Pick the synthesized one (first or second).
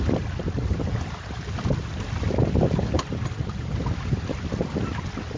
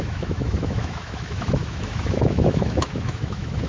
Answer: second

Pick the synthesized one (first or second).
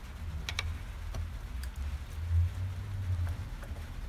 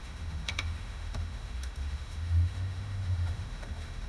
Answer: second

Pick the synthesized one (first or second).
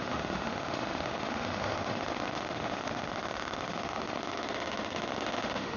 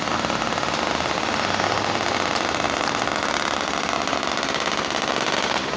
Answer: first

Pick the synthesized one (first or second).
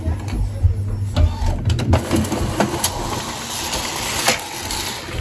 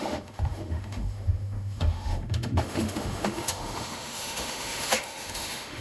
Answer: second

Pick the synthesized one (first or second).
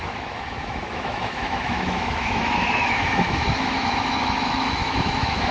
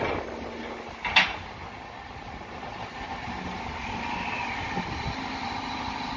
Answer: first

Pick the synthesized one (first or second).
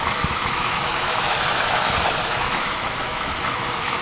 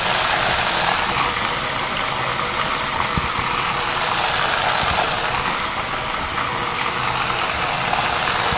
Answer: first